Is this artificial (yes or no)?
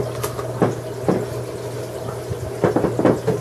no